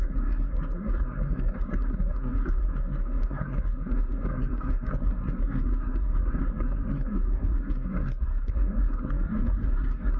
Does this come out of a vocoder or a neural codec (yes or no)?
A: yes